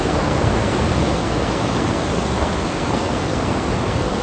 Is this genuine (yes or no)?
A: no